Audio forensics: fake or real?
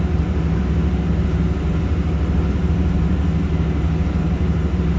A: real